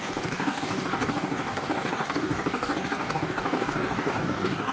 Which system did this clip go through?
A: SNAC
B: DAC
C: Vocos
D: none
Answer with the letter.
B